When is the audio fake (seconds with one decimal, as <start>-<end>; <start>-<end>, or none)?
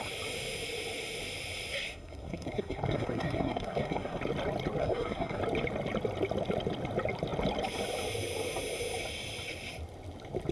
1.7-4.2; 4.8-5.4